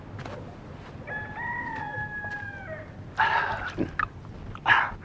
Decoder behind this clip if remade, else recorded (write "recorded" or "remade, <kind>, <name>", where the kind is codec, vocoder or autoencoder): recorded